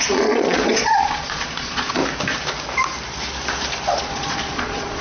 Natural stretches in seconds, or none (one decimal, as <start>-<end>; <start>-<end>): 2.0-4.0